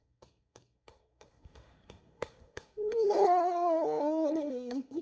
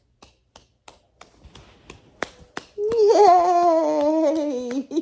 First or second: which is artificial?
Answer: first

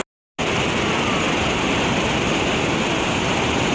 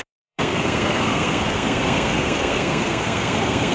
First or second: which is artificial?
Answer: second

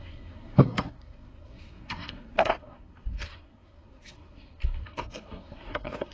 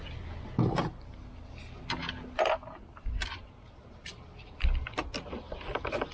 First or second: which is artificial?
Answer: first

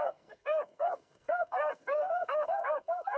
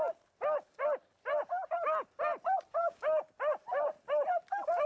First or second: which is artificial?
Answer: first